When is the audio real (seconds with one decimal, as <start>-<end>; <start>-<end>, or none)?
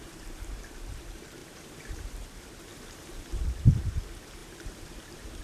none